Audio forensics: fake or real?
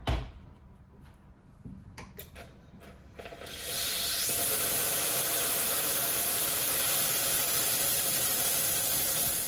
real